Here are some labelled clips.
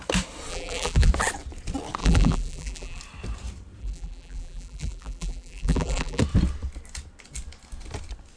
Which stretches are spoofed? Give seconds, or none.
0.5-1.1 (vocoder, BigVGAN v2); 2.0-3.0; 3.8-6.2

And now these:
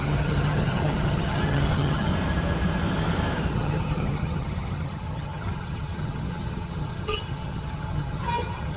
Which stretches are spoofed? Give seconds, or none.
0.0-2.1 (vocoder, HiFi-GAN); 3.5-8.8

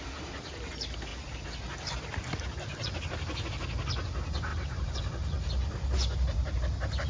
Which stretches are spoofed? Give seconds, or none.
4.5-5.0 (vocoder, BigVGAN v2)

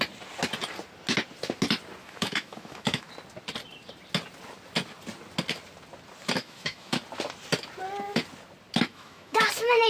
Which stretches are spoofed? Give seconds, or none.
2.0-3.1 (autoencoder, DAC-VAE); 6.4-7.0; 8.9-9.5